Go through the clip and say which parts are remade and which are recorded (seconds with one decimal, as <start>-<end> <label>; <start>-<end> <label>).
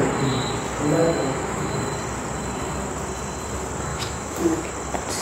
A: 0.0-1.0 recorded; 1.0-1.8 remade; 1.8-3.9 recorded; 3.9-4.7 remade; 4.7-5.2 recorded